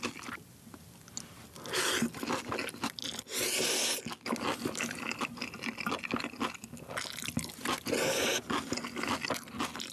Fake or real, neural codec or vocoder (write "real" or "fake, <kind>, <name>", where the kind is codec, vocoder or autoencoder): real